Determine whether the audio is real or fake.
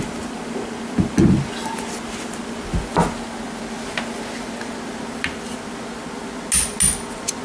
real